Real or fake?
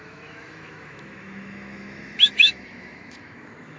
fake